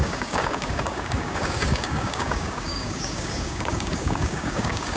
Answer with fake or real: fake